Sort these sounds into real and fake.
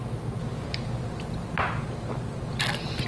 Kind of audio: real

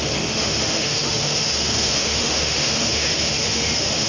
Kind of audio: fake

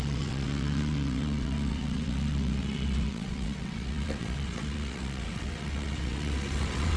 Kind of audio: fake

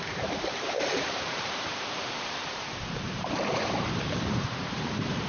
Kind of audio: fake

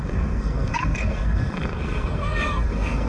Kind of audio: fake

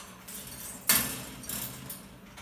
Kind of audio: real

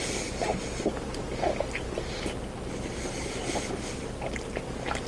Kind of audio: real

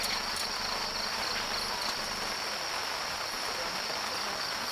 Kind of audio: real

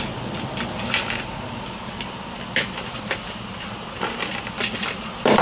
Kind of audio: real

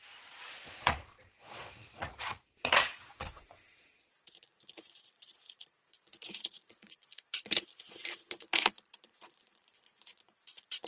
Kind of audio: fake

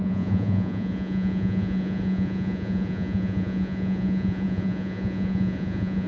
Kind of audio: fake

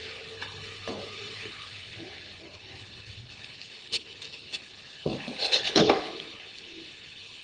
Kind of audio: fake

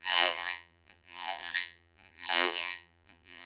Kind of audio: fake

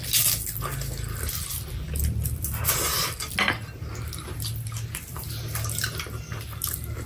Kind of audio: real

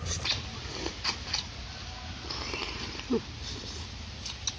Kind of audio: real